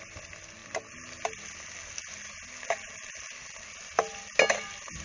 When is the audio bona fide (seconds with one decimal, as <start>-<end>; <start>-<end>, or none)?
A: 0.0-5.0